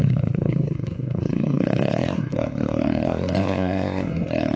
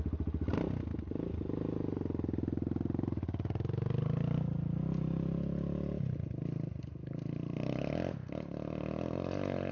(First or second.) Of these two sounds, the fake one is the first